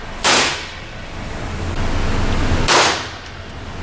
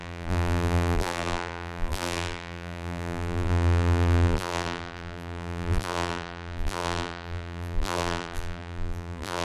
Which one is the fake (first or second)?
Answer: second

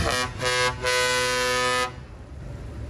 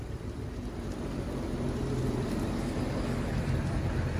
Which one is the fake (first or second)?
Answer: second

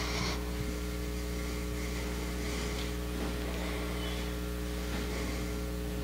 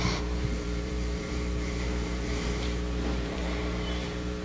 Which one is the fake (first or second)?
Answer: second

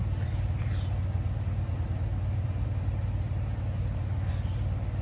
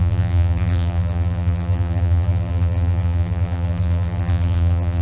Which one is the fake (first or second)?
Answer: second